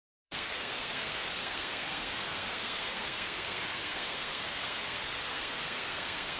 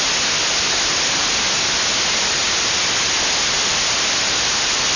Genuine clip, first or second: second